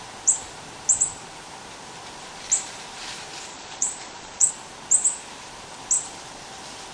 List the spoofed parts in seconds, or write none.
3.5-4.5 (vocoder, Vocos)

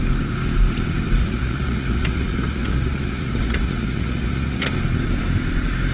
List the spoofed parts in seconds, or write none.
1.2-4.7 (vocoder, Vocos)

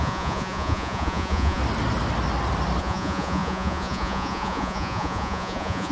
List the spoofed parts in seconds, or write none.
0.0-1.6 (vocoder, Vocos); 2.8-5.9

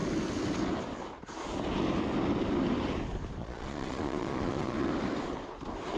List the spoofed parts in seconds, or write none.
3.4-4.9 (vocoder, Vocos)

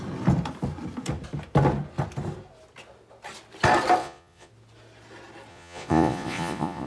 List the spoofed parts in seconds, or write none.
4.0-4.5 (vocoder, Vocos); 5.5-6.9